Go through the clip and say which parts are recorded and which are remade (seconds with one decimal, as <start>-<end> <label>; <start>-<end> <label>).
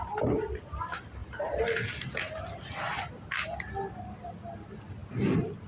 0.0-1.2 recorded; 1.2-2.9 remade; 2.9-5.0 recorded; 5.0-5.7 remade